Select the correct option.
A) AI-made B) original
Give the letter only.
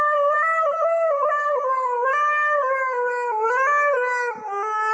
B